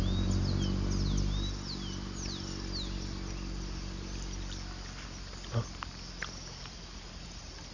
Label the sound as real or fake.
real